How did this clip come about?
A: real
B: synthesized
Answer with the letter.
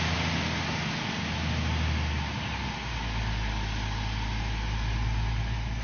A